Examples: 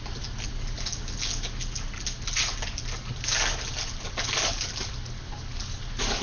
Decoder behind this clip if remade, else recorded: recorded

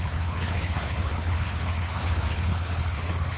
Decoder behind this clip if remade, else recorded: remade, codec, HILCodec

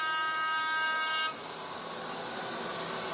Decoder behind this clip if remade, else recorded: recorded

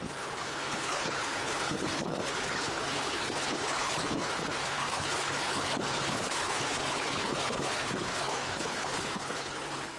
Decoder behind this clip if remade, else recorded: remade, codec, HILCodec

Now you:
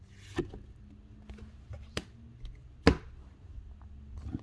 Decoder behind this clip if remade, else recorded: recorded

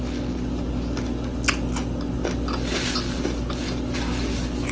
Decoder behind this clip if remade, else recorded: recorded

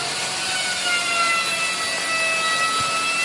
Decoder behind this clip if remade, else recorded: recorded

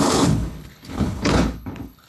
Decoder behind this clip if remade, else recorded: remade, codec, HILCodec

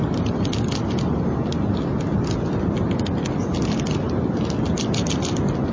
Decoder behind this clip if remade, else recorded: recorded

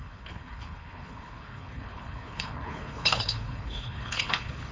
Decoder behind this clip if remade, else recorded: remade, codec, HILCodec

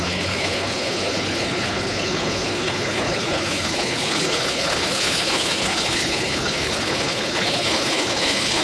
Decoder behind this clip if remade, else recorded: remade, codec, HILCodec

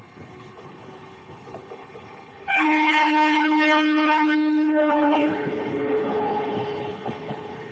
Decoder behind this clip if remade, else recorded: remade, codec, HILCodec